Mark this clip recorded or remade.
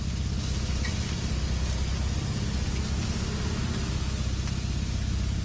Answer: recorded